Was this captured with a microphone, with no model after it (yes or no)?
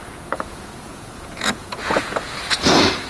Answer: no